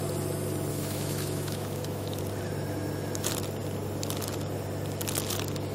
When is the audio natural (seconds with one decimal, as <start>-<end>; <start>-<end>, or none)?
0.0-0.7; 2.2-5.7